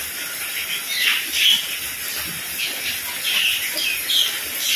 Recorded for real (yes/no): yes